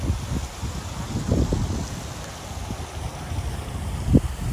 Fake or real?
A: real